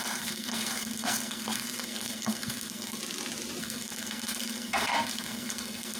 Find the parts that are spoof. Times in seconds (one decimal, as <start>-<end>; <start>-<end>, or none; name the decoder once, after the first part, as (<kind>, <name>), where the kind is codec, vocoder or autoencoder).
0.0-3.0 (codec, SNAC); 3.6-6.0